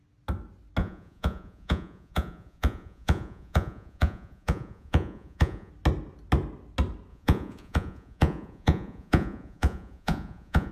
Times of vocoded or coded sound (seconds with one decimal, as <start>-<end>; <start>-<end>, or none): 0.8-5.7; 7.1-10.7